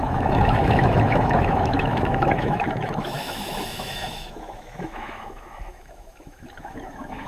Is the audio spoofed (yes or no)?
yes